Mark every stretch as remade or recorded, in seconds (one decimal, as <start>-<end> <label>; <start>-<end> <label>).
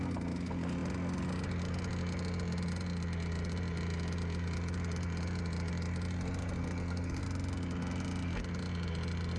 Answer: 0.0-6.6 recorded; 6.6-7.2 remade; 7.2-9.4 recorded